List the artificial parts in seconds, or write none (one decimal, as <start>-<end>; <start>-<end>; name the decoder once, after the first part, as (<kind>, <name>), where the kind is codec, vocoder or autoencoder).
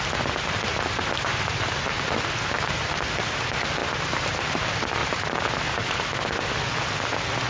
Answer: 0.7-1.5 (vocoder, BigVGAN v2); 3.8-4.4; 5.0-5.9